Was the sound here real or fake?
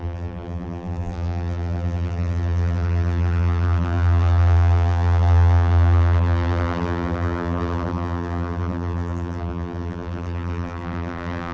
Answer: fake